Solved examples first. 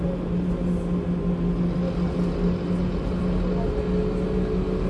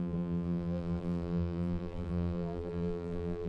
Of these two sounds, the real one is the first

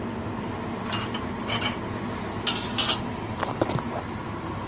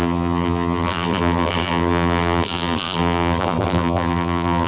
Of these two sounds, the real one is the first